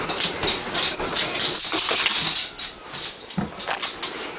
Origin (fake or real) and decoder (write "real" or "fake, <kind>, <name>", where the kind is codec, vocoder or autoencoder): real